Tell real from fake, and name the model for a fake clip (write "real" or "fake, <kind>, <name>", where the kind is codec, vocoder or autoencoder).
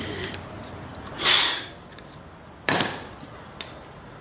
real